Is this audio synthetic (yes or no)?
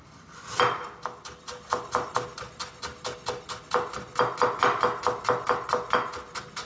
no